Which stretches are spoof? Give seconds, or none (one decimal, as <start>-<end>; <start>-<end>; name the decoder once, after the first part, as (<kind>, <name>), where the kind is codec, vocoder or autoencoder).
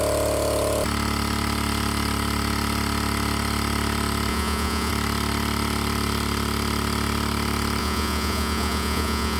4.3-4.9 (vocoder, Vocos); 7.8-9.4